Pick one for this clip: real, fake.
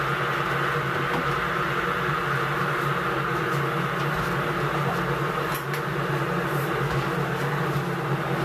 real